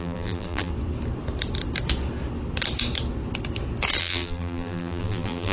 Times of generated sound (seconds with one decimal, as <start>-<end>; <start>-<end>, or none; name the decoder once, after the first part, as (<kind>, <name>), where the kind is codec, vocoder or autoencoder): 0.0-0.7 (vocoder, BigVGAN v2); 4.0-5.5

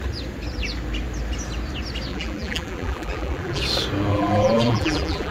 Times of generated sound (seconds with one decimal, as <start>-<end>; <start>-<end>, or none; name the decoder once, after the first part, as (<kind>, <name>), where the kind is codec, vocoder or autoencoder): 2.1-3.6 (vocoder, BigVGAN v2); 4.1-5.3

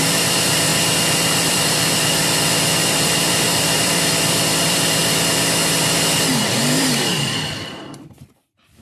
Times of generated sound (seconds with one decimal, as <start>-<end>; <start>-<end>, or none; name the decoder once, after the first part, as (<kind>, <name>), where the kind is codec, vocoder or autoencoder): 0.0-0.7 (vocoder, BigVGAN v2); 1.5-5.0; 6.3-8.8

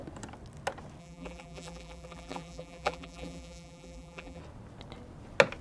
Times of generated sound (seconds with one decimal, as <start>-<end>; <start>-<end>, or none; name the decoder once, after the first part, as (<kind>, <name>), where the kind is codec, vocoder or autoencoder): 1.0-4.4 (vocoder, BigVGAN v2)

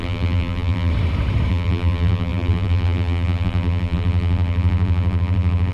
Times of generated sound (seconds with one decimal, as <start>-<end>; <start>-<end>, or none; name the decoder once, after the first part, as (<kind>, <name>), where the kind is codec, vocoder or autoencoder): 0.0-0.9 (vocoder, BigVGAN v2); 1.5-5.7

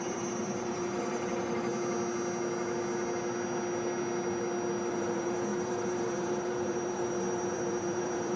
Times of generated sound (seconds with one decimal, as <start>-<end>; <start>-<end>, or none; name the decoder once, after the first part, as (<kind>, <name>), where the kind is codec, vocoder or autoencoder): 0.0-1.7 (vocoder, BigVGAN v2); 4.9-8.4

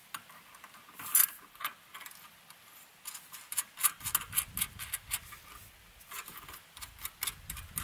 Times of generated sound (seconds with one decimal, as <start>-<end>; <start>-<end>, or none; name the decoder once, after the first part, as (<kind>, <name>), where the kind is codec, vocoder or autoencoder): none

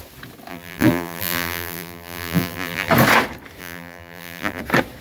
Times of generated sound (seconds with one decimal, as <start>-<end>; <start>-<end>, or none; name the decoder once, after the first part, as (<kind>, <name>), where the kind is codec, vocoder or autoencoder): 0.5-2.9 (vocoder, BigVGAN v2); 3.6-4.6